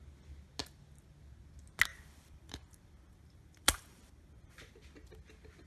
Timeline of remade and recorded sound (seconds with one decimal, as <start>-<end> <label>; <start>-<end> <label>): 0.0-1.9 recorded; 1.9-4.7 remade; 4.7-5.7 recorded